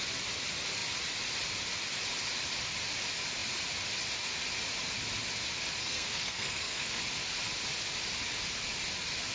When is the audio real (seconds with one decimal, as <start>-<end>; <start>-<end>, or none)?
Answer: 0.0-5.8; 7.0-9.3